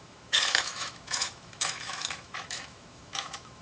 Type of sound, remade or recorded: remade